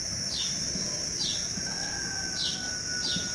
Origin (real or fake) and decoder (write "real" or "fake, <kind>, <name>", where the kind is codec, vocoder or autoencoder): real